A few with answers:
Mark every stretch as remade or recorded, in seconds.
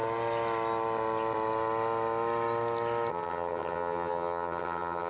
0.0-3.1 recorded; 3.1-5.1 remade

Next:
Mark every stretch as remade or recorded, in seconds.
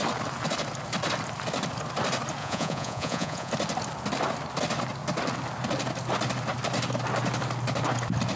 0.0-2.4 recorded; 2.4-3.5 remade; 3.5-8.4 recorded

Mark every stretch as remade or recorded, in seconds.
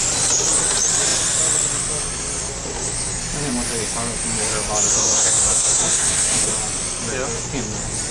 0.0-4.9 recorded; 4.9-6.5 remade; 6.5-8.1 recorded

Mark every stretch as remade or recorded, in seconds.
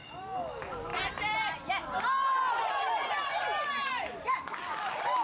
0.0-0.9 remade; 0.9-4.0 recorded; 4.0-5.2 remade